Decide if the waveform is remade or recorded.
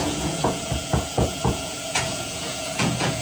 remade